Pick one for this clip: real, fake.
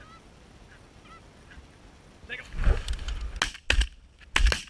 real